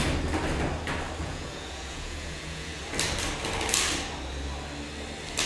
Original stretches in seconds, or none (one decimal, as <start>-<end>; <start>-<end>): 0.0-1.2; 2.8-5.5